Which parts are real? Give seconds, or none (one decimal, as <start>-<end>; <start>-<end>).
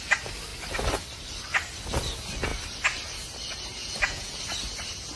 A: 0.0-3.8; 4.4-5.2